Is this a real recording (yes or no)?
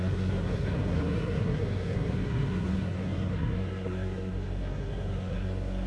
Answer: no